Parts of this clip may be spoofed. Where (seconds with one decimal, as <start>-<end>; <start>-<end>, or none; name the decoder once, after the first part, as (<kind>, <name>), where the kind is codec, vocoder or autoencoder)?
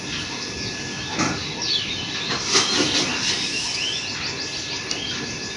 1.4-4.4 (vocoder, BigVGAN v2)